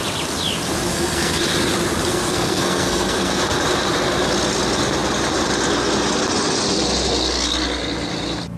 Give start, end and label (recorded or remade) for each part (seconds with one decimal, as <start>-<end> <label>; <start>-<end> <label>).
0.0-0.9 recorded; 0.9-1.4 remade; 1.4-2.1 recorded; 2.1-3.4 remade; 3.4-8.6 recorded